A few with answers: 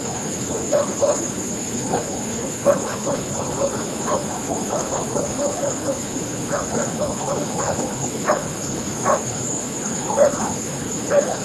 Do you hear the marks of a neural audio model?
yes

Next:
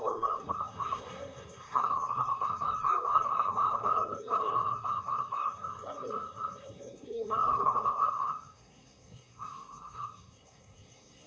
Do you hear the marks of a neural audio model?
yes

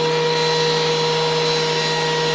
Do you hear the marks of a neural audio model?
no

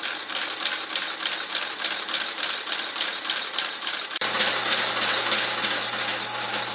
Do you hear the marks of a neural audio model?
no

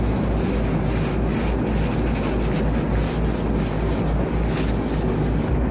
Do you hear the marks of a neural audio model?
no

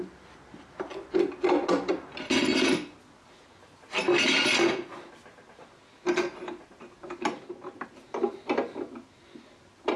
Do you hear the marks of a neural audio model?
no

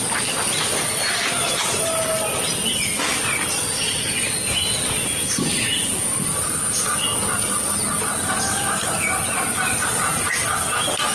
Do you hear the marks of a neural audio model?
no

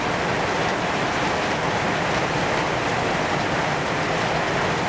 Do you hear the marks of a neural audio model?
no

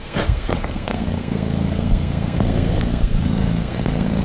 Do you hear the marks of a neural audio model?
yes